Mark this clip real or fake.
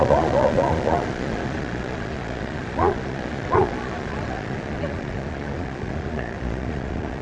fake